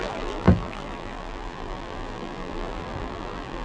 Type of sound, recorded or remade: remade